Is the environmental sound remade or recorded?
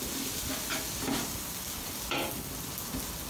recorded